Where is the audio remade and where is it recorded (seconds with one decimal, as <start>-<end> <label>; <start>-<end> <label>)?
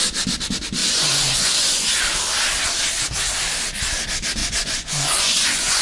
0.0-0.8 recorded; 0.8-2.0 remade; 2.0-4.4 recorded; 4.4-5.8 remade